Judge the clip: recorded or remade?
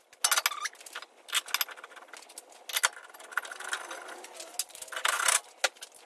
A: recorded